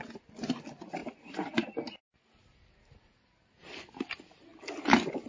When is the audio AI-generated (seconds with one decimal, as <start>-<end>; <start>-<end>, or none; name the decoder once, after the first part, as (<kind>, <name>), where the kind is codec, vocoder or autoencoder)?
none